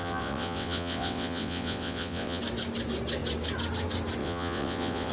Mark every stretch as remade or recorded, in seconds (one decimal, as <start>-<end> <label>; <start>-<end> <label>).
0.0-2.4 remade; 2.4-4.2 recorded; 4.2-5.1 remade